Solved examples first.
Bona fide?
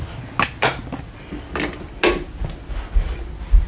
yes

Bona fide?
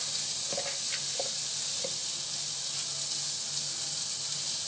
yes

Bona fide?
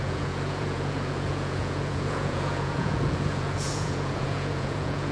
no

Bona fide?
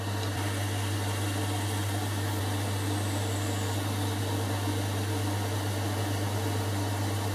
yes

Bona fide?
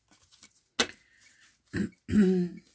yes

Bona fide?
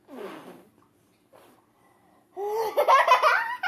yes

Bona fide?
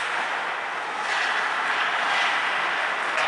yes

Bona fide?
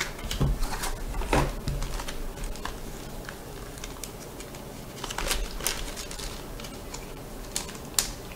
yes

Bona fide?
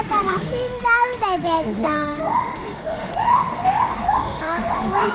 no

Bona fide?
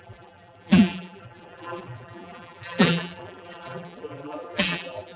no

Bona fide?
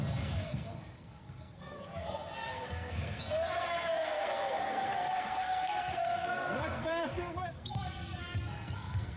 no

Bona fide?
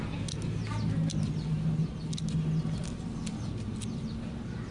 yes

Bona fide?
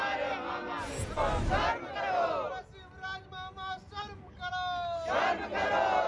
yes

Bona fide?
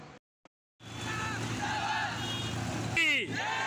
yes